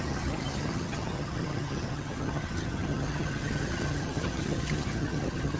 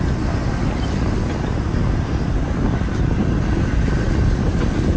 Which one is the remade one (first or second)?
first